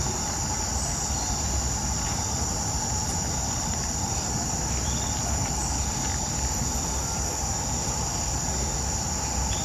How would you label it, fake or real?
real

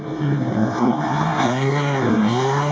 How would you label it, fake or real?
fake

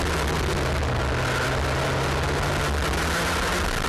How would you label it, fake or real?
real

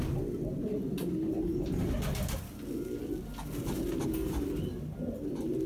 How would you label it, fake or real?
real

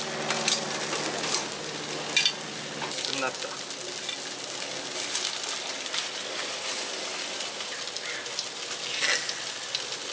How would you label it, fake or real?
real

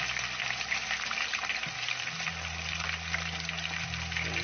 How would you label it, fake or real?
real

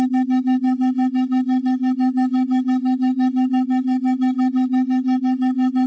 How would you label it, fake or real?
fake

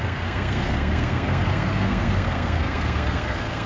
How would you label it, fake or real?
fake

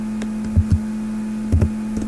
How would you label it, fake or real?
real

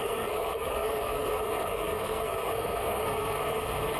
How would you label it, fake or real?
fake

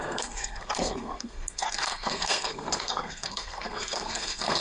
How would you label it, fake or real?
fake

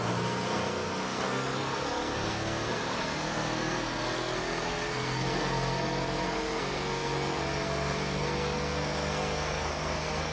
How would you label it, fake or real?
fake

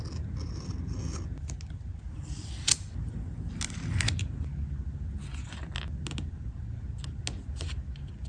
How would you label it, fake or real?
real